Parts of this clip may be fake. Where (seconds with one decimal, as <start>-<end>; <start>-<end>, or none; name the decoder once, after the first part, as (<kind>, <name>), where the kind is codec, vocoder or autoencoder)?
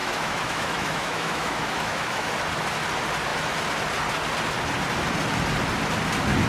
0.0-2.3 (autoencoder, DAC-VAE)